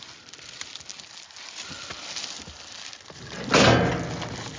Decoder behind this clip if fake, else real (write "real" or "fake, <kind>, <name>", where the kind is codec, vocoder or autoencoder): real